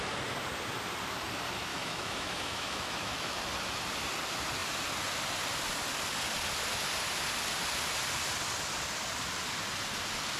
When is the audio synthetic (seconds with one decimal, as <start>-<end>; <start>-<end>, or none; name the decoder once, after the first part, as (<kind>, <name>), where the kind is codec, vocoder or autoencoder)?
1.7-3.4 (autoencoder, DAC-VAE)